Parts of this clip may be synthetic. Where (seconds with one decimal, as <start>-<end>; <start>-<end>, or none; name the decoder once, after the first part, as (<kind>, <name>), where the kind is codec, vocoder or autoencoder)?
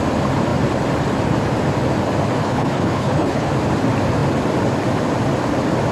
2.4-3.5 (codec, HILCodec)